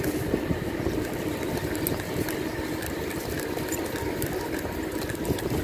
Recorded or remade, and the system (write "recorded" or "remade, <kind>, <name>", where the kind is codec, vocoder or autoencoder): recorded